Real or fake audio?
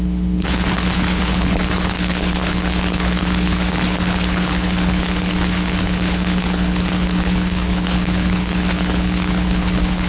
fake